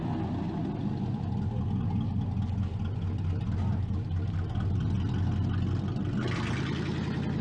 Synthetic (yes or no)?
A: no